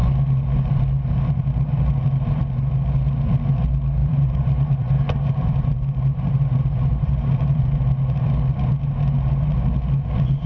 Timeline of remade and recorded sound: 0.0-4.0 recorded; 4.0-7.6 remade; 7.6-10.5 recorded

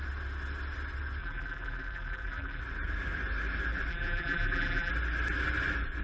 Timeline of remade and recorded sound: 0.0-1.2 recorded; 1.2-2.6 remade; 2.6-3.9 recorded; 3.9-4.9 remade; 4.9-6.0 recorded

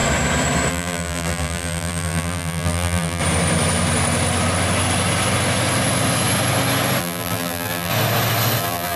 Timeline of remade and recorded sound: 0.0-0.7 recorded; 0.7-3.2 remade; 3.2-7.0 recorded; 7.0-7.9 remade; 7.9-8.6 recorded; 8.6-9.0 remade

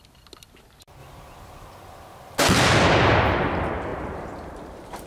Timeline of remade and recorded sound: 0.0-3.9 recorded; 3.9-5.1 remade

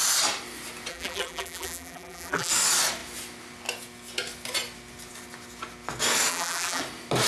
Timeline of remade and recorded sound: 0.0-0.9 recorded; 0.9-2.5 remade; 2.5-6.3 recorded; 6.3-6.8 remade; 6.8-7.3 recorded

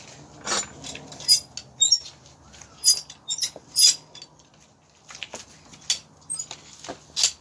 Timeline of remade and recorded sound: 0.0-7.4 recorded